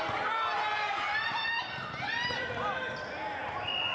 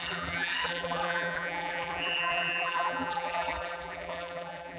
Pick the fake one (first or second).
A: second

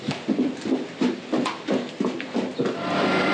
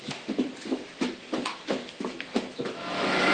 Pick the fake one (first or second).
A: second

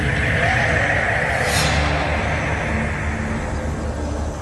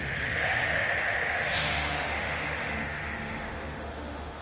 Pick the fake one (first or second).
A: second